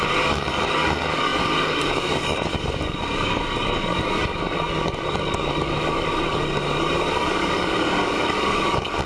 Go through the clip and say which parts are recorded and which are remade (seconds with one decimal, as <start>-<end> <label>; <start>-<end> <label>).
0.0-9.1 remade